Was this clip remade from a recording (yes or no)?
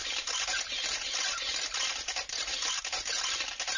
no